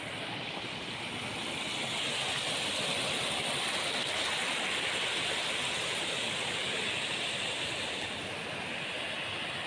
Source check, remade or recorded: recorded